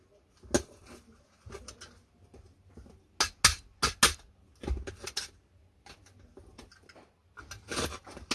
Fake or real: real